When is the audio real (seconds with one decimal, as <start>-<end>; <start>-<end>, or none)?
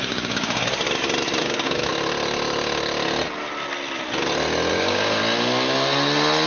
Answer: 0.6-1.4; 1.9-4.7; 5.2-6.5